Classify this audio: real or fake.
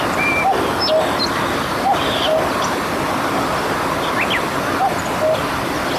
real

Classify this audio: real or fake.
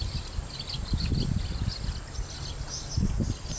real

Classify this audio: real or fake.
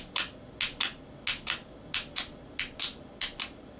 real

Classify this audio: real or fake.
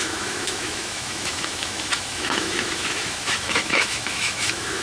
fake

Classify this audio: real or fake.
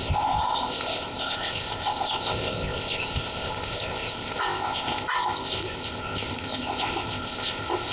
fake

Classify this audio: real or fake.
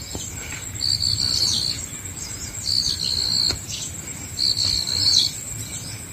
real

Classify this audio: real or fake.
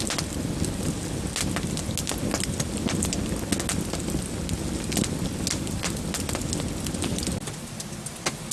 real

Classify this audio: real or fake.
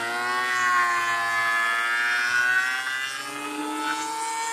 real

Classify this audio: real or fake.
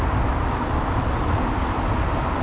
real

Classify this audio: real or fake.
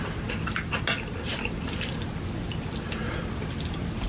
real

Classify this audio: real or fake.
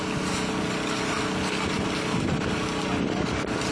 real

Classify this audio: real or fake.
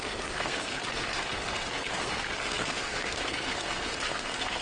fake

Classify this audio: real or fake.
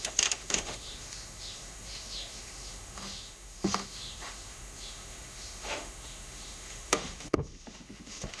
fake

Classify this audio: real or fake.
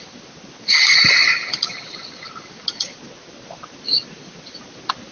real